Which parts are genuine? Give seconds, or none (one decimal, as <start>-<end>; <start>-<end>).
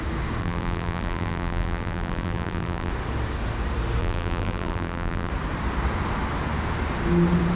0.0-0.4; 2.9-4.0; 5.3-7.5